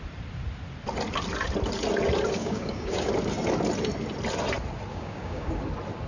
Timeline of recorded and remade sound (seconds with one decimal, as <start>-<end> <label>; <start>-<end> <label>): 0.0-2.4 recorded; 2.4-3.1 remade; 3.1-4.9 recorded; 4.9-5.5 remade; 5.5-6.1 recorded